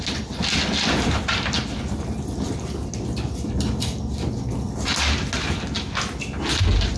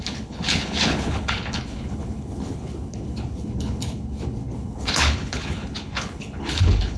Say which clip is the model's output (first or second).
second